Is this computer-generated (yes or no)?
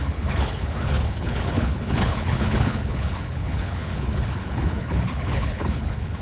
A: yes